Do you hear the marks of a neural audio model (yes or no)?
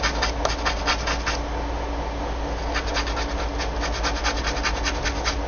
no